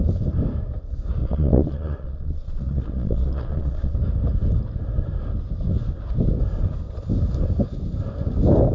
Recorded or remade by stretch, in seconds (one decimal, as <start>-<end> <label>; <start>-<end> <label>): 0.0-1.2 recorded; 1.2-3.9 remade; 3.9-8.7 recorded